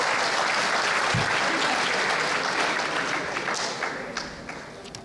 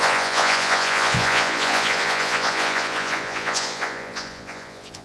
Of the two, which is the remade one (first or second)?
second